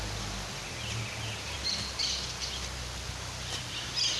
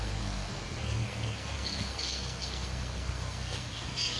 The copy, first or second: second